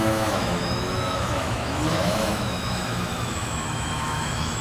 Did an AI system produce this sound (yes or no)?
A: yes